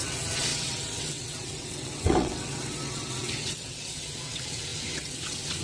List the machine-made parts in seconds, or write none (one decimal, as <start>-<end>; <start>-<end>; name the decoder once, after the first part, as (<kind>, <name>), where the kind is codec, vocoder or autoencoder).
0.0-5.6 (vocoder, WaveNeXt)